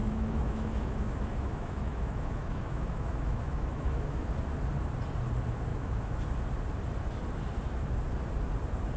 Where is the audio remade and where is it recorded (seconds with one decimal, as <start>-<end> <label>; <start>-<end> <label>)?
0.0-4.3 remade; 4.3-5.7 recorded; 5.7-6.2 remade; 6.2-9.0 recorded